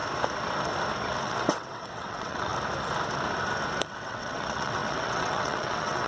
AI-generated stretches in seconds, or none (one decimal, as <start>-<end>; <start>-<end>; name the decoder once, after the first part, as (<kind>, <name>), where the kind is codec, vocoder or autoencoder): 1.2-2.5 (vocoder, WaveNeXt); 3.9-6.1